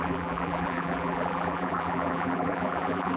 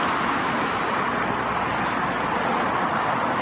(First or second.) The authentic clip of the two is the second